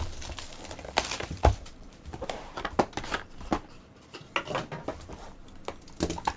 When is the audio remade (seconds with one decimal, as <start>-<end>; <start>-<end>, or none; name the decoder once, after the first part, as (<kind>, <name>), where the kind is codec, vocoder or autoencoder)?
0.8-4.2 (vocoder, BigVGAN v2); 4.9-5.4